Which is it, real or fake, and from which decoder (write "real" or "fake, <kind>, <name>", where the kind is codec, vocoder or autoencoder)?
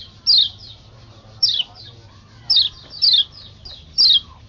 real